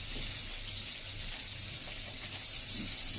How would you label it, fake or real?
real